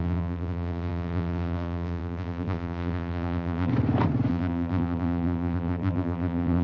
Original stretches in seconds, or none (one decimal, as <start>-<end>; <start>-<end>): 3.7-4.3